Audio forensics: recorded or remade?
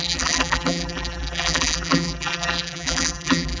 remade